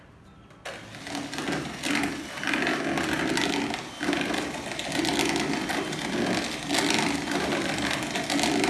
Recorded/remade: recorded